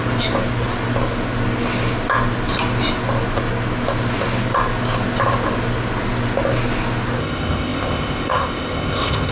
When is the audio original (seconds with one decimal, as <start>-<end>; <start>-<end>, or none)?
0.0-7.2